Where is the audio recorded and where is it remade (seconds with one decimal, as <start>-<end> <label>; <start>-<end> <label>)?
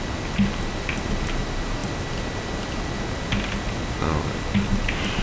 0.0-5.2 recorded